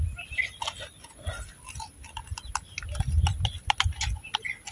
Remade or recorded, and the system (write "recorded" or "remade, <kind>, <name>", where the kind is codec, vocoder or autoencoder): recorded